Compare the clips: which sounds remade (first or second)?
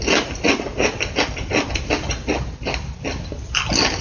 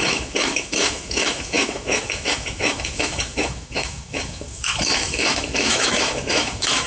second